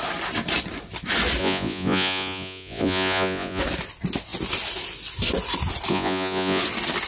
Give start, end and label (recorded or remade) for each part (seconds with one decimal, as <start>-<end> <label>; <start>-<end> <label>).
0.0-1.4 recorded; 1.4-3.6 remade; 3.6-5.9 recorded; 5.9-6.6 remade; 6.6-7.1 recorded